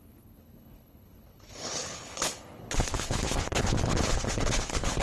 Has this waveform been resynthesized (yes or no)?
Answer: yes